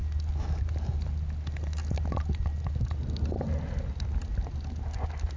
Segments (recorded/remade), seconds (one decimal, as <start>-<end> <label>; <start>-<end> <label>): 0.0-5.4 recorded